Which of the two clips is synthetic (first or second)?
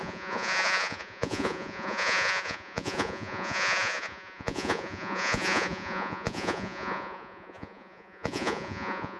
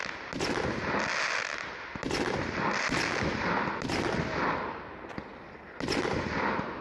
first